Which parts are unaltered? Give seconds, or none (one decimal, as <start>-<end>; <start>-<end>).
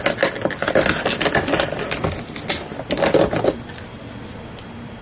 0.0-5.0